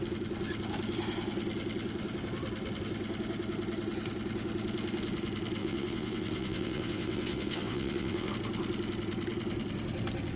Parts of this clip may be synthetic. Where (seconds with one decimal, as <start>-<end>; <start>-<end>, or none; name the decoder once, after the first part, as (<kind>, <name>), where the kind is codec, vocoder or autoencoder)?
5.6-8.3 (vocoder, WaveNeXt)